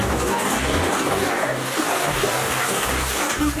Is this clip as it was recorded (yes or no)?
no